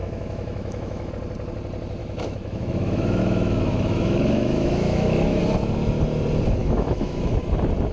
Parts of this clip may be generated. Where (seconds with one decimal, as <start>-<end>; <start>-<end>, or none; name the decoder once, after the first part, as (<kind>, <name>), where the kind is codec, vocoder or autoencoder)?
0.0-1.1 (autoencoder, DAC-VAE); 2.0-5.4; 6.6-7.4